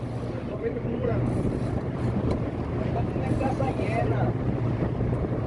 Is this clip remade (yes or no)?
yes